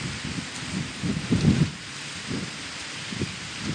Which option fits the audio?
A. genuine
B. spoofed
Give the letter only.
A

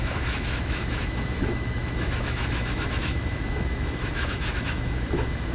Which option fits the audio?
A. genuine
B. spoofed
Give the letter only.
B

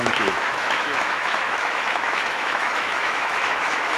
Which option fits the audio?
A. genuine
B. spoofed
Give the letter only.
B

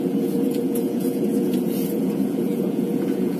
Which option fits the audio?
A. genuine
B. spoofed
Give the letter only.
B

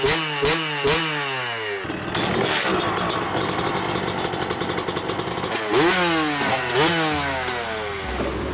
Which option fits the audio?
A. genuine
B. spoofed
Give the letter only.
A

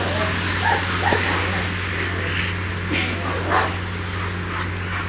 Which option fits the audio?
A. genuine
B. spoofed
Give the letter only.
A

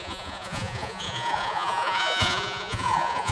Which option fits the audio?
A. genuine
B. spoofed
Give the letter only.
B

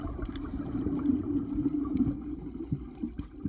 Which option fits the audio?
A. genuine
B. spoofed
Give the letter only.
A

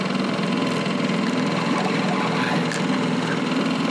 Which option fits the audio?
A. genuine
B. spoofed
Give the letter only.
A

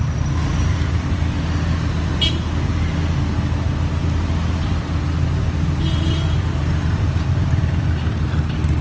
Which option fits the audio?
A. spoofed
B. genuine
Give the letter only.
B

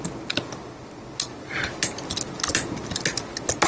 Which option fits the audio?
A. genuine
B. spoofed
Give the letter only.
A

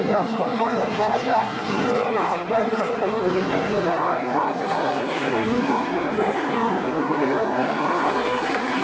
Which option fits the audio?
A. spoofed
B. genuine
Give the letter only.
A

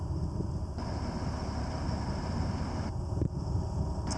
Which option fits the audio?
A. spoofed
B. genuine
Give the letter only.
B